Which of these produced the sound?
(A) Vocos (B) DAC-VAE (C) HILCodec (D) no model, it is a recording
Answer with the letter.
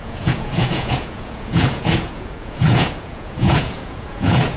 A